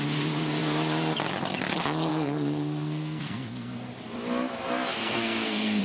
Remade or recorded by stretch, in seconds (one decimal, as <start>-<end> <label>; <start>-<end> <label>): 0.0-2.1 recorded; 2.1-3.9 remade; 3.9-5.0 recorded; 5.0-5.8 remade